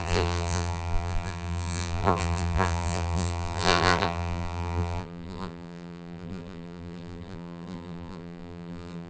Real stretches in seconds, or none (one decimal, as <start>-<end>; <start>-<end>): none